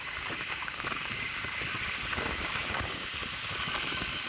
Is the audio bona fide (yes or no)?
no